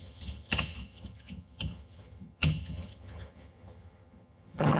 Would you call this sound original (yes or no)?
no